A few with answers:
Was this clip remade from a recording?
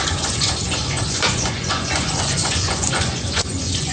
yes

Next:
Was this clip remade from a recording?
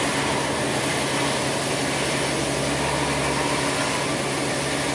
no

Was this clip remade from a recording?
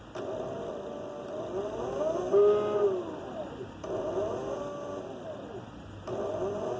no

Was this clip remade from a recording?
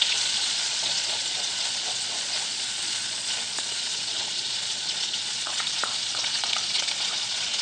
yes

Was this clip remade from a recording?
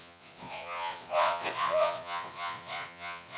yes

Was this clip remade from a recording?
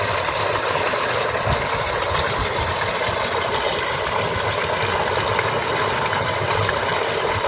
no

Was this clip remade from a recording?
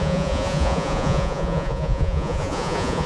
yes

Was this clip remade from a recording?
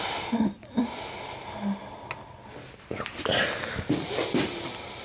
no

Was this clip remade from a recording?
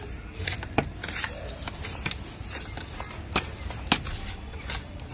no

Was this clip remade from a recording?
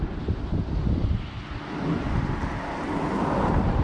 no